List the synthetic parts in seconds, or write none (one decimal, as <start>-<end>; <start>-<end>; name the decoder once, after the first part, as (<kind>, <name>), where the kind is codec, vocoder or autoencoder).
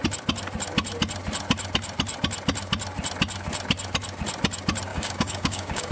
4.9-5.9 (codec, DAC)